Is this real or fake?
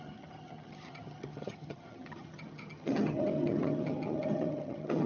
fake